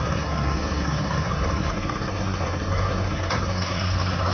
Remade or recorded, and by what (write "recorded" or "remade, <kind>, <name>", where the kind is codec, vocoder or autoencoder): remade, codec, SNAC